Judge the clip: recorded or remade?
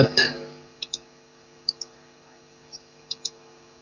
remade